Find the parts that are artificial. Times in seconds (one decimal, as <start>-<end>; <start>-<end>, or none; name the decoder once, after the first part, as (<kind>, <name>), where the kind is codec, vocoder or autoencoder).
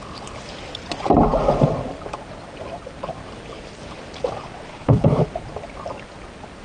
4.7-5.2 (codec, HILCodec)